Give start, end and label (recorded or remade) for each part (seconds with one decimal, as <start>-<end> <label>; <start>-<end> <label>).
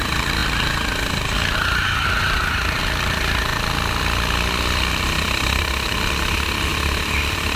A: 0.0-0.4 remade; 0.4-2.8 recorded; 2.8-3.5 remade; 3.5-4.0 recorded; 4.0-7.6 remade